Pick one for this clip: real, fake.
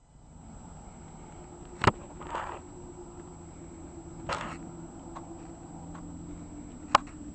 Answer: real